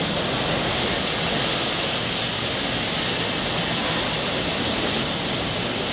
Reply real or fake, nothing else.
real